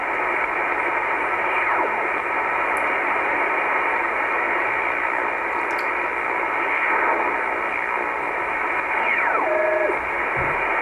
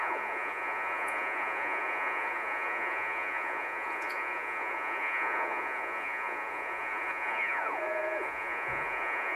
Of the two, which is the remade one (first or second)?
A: second